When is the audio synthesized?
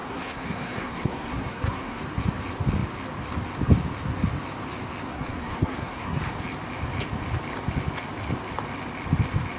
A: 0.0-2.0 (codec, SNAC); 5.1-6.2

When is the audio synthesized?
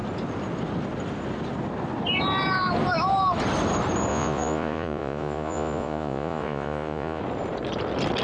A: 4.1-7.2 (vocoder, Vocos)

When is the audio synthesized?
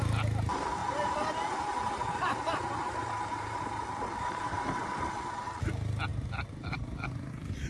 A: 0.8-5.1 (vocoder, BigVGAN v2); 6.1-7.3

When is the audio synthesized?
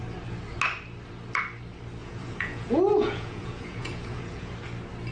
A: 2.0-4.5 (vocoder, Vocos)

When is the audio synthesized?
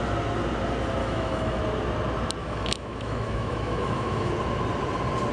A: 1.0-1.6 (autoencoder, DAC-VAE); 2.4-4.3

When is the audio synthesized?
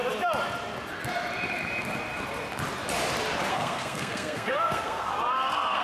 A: 3.5-5.8 (codec, SNAC)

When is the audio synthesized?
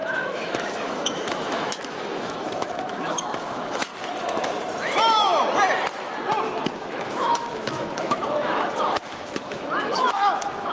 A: 0.0-3.9 (autoencoder, DAC-VAE); 4.8-5.3; 6.7-10.7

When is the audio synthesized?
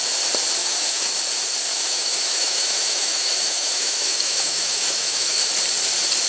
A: 0.6-1.1 (autoencoder, DAC-VAE); 1.7-5.5